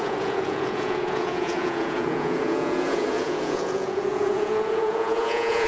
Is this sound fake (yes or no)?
yes